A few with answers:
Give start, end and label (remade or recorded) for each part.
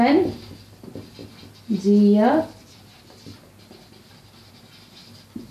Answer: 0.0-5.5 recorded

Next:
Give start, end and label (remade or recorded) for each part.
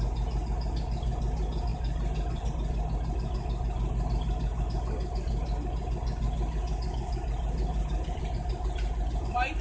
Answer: 0.0-1.7 recorded; 1.7-2.5 remade; 2.5-7.7 recorded; 7.7-9.6 remade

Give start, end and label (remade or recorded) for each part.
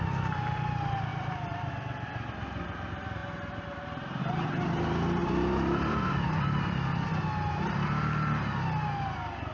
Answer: 0.0-1.1 recorded; 1.1-1.7 remade; 1.7-5.2 recorded; 5.2-6.0 remade; 6.0-9.5 recorded